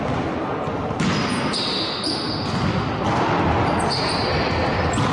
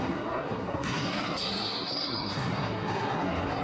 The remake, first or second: second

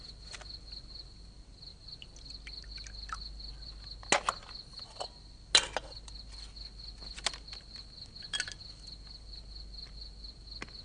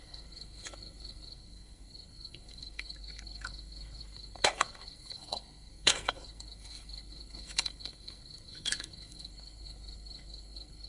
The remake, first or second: second